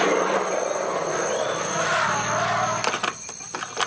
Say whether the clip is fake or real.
real